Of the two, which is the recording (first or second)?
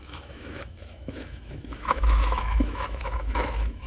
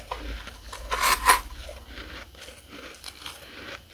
second